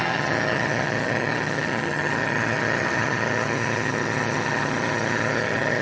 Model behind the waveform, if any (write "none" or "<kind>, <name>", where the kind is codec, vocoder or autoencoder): vocoder, HiFi-GAN